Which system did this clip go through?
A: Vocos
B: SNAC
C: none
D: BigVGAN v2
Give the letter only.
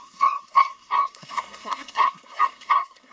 B